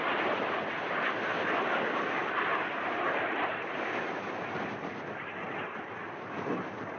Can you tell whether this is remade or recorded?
recorded